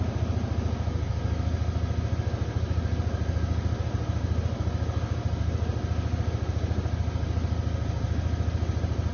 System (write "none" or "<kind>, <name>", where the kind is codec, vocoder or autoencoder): none